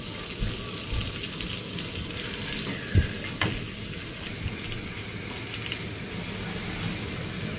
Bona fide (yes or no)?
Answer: yes